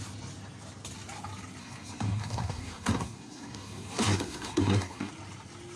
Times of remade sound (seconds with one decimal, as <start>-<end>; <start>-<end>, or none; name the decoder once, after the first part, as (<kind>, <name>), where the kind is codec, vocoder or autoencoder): 1.6-5.1 (codec, SNAC)